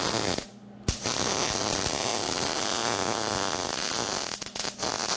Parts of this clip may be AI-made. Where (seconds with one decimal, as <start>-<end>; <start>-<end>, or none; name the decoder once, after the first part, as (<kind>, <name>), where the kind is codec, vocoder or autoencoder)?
none